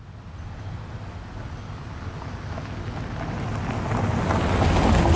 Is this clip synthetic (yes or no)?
no